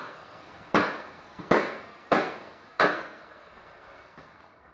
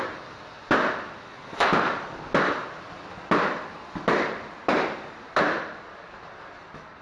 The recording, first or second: second